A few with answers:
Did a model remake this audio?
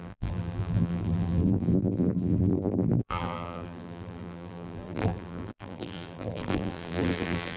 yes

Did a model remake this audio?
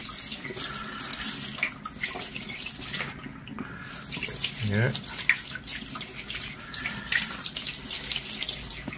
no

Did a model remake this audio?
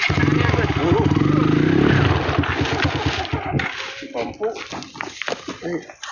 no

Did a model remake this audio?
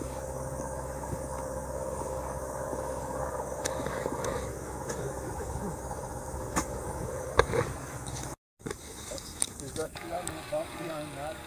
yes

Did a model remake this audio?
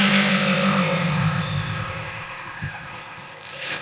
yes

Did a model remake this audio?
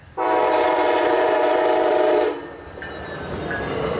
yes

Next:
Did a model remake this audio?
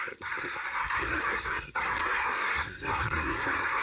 yes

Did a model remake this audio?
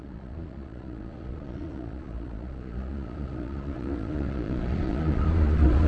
yes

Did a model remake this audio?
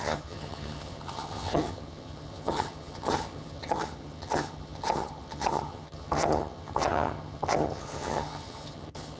yes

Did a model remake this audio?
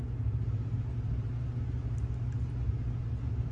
no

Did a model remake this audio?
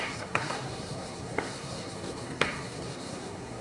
yes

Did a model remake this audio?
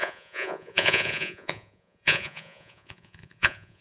yes